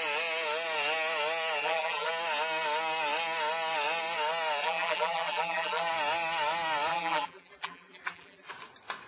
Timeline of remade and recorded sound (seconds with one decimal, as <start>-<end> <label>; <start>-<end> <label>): 0.0-1.6 recorded; 1.6-2.1 remade; 2.1-4.6 recorded; 4.6-5.9 remade; 5.9-6.9 recorded; 6.9-8.5 remade; 8.5-9.1 recorded